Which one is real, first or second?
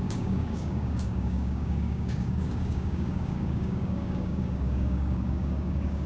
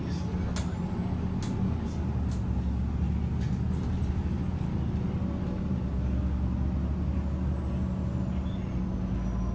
second